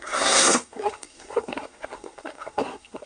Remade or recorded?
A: remade